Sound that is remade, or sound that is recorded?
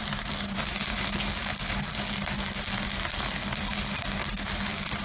recorded